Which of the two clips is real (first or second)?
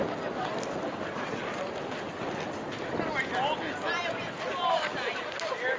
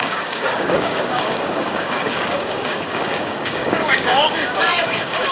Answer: first